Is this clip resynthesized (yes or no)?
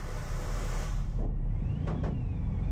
yes